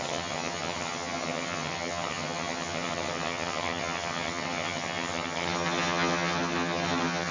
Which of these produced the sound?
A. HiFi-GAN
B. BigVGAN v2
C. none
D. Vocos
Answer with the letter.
A